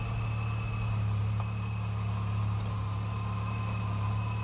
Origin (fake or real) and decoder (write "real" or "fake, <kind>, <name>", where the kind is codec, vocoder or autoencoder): real